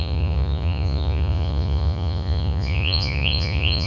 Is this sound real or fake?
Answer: fake